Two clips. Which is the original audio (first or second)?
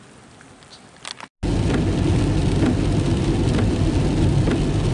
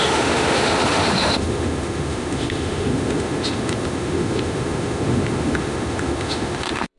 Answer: first